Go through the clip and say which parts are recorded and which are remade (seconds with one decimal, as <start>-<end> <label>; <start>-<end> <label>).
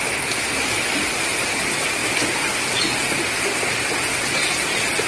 0.0-5.1 recorded